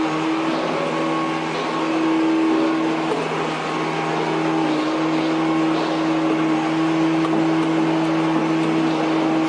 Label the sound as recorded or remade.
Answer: recorded